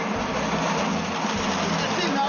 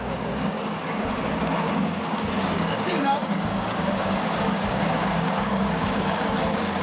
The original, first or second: first